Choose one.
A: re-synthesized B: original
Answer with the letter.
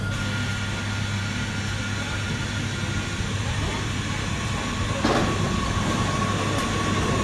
B